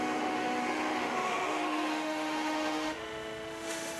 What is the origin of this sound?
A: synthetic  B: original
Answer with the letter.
A